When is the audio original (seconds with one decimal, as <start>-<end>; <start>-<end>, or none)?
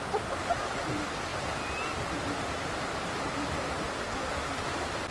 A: 0.0-5.1